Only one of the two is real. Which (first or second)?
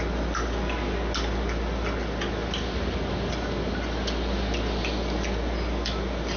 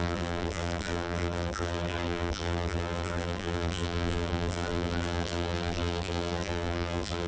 first